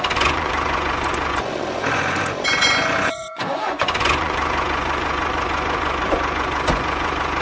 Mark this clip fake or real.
fake